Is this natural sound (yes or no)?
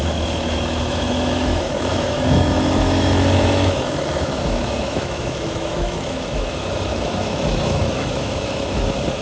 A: no